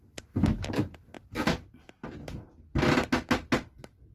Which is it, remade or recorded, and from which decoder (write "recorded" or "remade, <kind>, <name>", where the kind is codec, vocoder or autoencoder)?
recorded